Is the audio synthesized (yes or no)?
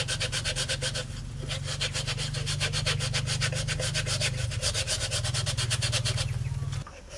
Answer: no